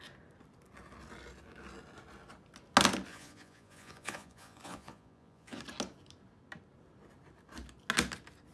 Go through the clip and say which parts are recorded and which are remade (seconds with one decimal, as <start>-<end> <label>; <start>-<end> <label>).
0.0-3.1 recorded; 3.1-5.6 remade; 5.6-8.5 recorded